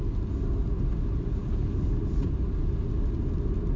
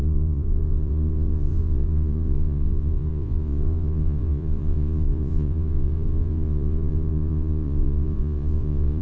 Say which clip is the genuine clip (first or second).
first